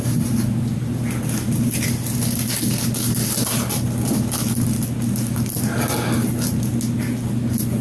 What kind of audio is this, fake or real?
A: real